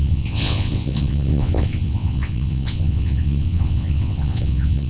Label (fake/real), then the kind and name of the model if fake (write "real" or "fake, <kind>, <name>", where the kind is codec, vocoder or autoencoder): fake, vocoder, WaveNeXt